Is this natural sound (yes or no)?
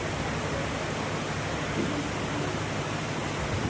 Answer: yes